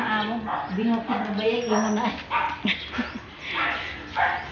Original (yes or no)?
yes